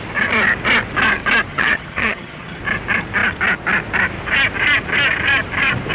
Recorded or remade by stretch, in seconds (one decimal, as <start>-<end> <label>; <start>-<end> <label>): 0.0-1.5 recorded; 1.5-2.6 remade; 2.6-5.9 recorded